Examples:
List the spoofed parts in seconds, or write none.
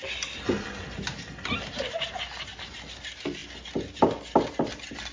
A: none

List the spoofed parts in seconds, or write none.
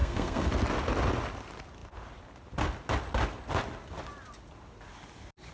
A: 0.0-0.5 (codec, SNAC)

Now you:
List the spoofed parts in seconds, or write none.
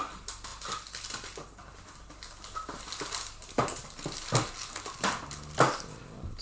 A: none